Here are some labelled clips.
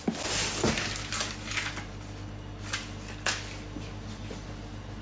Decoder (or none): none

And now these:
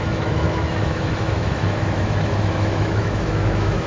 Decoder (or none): autoencoder, DAC-VAE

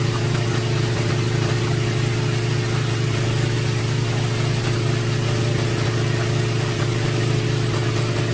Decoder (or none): none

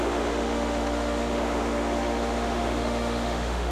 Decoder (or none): autoencoder, DAC-VAE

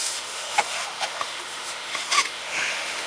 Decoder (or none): autoencoder, DAC-VAE